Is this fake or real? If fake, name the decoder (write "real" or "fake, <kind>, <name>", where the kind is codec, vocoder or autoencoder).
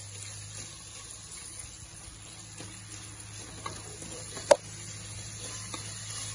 real